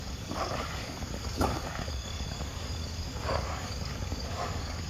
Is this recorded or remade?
remade